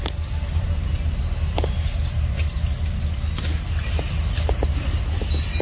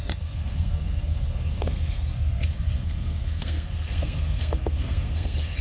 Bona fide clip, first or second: first